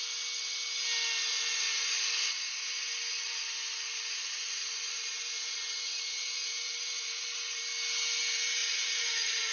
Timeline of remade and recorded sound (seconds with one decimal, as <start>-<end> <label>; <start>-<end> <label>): 0.0-1.3 recorded; 1.3-3.4 remade; 3.4-3.9 recorded; 3.9-7.6 remade; 7.6-8.6 recorded; 8.6-9.5 remade